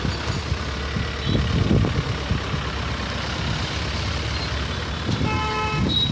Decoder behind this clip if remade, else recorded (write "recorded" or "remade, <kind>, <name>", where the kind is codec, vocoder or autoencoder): recorded